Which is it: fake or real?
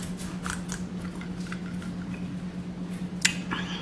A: real